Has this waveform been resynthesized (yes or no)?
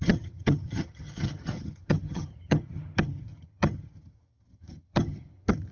yes